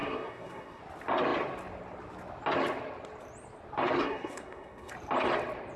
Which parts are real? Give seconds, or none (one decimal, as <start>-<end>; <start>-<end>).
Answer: 0.8-4.0; 4.9-5.8